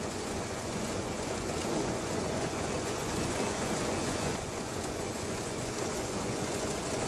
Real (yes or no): no